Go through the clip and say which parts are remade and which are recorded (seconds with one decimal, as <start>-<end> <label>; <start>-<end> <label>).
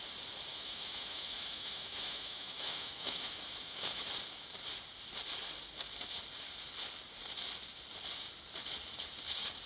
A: 0.0-0.5 recorded; 0.5-4.0 remade; 4.0-9.7 recorded